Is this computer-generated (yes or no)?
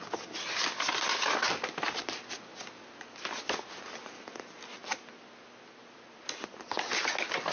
no